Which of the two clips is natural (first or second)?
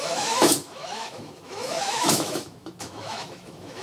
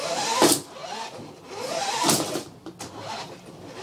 second